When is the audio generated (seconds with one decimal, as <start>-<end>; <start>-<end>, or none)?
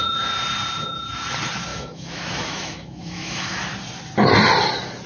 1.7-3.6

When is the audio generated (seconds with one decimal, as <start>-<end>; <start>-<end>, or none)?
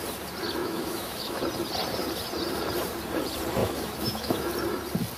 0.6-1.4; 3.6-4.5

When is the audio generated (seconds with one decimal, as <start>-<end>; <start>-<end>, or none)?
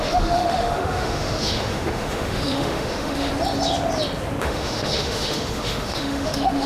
0.0-3.3; 4.4-6.7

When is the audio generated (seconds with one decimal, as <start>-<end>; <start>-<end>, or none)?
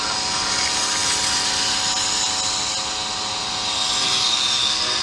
none